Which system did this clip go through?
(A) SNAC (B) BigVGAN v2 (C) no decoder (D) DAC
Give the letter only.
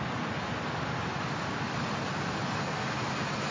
C